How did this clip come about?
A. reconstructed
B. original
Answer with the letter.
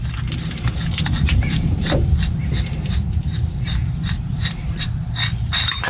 B